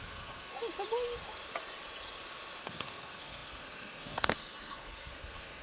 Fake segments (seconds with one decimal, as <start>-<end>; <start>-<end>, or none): 0.0-0.5; 2.6-5.6